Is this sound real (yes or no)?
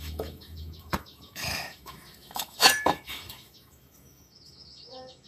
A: no